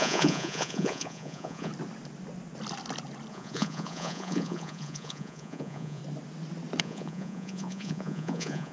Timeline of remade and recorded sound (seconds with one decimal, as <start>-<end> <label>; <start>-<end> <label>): 0.0-1.7 remade; 1.7-3.3 recorded; 3.3-6.0 remade; 6.0-6.8 recorded; 6.8-8.7 remade